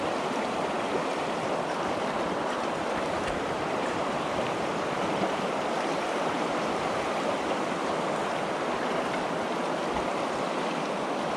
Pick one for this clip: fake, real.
fake